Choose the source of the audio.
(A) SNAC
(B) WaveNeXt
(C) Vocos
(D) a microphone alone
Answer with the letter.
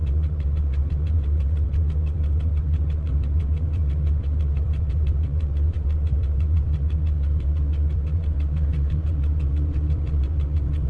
B